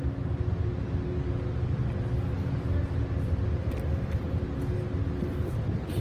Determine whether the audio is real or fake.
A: real